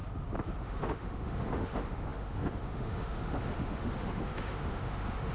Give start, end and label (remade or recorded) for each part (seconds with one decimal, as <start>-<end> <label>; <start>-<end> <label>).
0.0-0.6 recorded; 0.6-5.3 remade